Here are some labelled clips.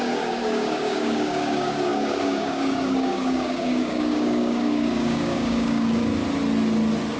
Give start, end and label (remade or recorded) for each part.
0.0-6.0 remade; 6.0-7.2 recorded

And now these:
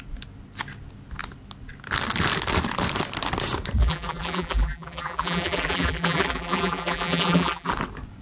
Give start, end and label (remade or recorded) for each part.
0.0-3.8 recorded; 3.8-7.7 remade; 7.7-8.2 recorded

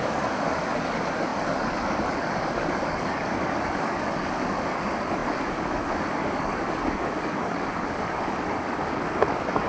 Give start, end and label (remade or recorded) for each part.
0.0-9.7 remade

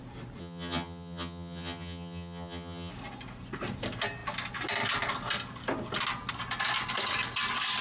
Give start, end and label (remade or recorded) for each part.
0.0-0.4 recorded; 0.4-2.9 remade; 2.9-7.8 recorded

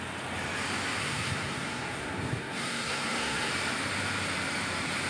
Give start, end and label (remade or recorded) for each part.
0.0-1.0 recorded; 1.0-3.5 remade; 3.5-5.1 recorded

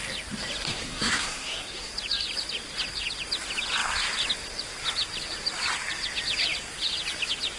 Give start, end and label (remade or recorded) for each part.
0.0-0.7 recorded; 0.7-1.9 remade; 1.9-7.6 recorded

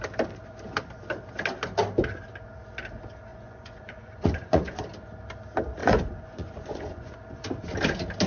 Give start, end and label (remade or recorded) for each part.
0.0-3.3 recorded; 3.3-4.8 remade; 4.8-5.8 recorded; 5.8-7.1 remade; 7.1-8.3 recorded

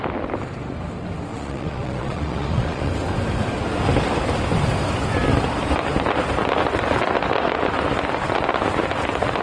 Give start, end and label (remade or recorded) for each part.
0.0-1.3 recorded; 1.3-2.9 remade; 2.9-9.4 recorded